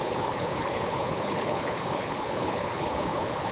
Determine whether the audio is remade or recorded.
remade